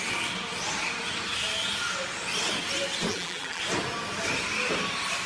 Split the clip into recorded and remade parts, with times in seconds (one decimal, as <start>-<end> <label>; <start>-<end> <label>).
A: 0.0-3.1 recorded; 3.1-3.6 remade; 3.6-5.3 recorded

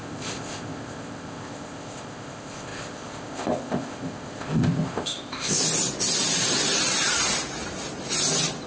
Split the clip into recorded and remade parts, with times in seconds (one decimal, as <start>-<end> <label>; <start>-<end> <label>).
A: 0.0-5.6 remade; 5.6-8.7 recorded

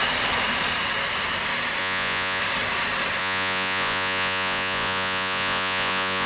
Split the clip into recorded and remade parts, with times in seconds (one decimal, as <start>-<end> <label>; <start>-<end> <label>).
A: 0.0-1.8 recorded; 1.8-2.4 remade; 2.4-3.2 recorded; 3.2-6.3 remade